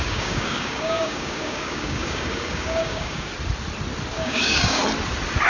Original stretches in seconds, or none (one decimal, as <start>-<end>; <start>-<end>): 3.3-4.1; 4.8-5.5

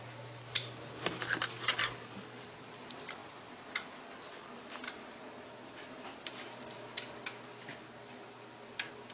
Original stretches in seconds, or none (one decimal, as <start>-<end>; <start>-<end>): 0.0-1.8; 2.4-9.1